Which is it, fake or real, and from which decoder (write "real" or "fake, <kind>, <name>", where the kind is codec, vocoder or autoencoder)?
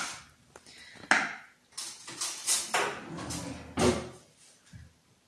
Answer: real